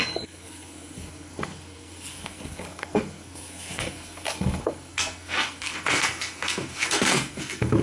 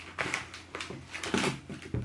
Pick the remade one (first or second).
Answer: first